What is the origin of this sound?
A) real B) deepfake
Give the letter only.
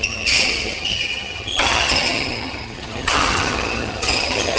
B